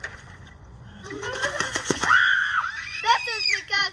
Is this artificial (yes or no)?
yes